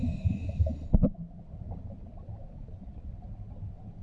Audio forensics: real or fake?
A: real